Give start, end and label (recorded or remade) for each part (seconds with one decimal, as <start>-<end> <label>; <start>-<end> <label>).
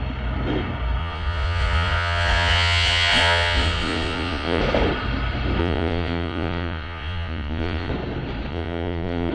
0.0-1.0 recorded; 1.0-4.6 remade; 4.6-5.6 recorded; 5.6-7.9 remade; 7.9-8.5 recorded; 8.5-9.3 remade